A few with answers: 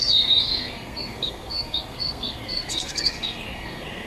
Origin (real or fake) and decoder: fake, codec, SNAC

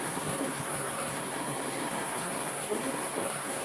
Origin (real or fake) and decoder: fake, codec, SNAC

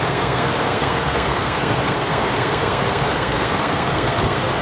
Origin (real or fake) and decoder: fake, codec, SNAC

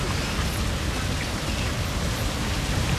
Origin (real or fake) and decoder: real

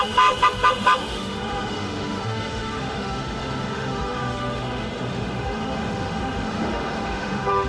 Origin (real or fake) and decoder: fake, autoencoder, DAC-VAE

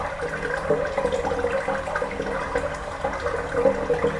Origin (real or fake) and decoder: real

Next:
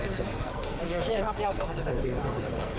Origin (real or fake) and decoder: fake, codec, SNAC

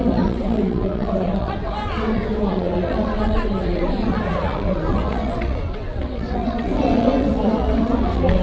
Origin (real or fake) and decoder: fake, vocoder, WaveNeXt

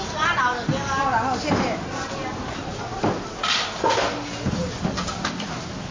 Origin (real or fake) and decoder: real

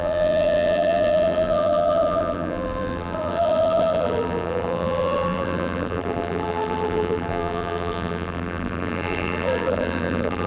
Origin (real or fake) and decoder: fake, vocoder, BigVGAN v2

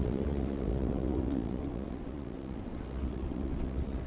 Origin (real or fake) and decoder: fake, vocoder, WaveNeXt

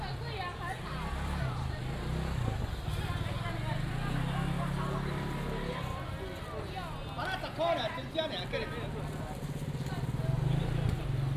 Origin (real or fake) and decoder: real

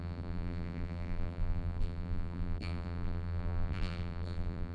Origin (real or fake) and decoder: fake, vocoder, BigVGAN v2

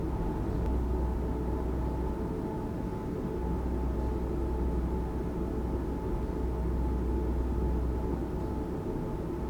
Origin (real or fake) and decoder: real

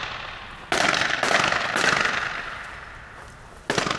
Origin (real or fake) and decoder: real